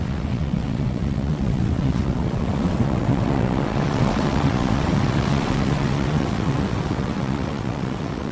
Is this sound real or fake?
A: fake